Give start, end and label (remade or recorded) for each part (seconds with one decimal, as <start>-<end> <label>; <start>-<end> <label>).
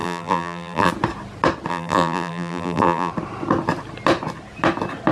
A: 0.0-0.9 remade; 0.9-1.7 recorded; 1.7-3.1 remade; 3.1-5.1 recorded